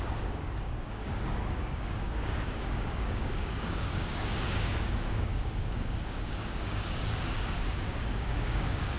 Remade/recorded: remade